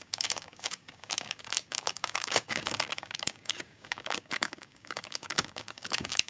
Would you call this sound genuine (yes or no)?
no